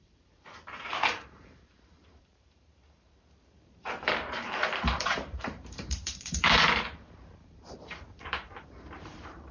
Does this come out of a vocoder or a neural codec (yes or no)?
yes